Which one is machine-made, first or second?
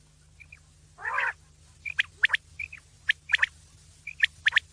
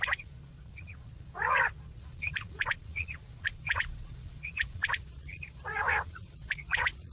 second